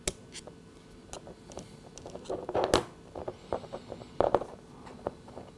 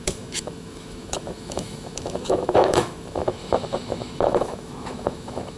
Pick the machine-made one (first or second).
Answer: second